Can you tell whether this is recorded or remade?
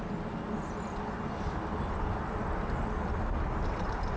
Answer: recorded